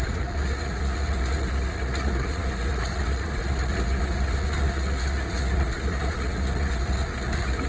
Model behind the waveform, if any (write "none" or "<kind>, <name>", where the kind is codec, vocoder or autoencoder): vocoder, Vocos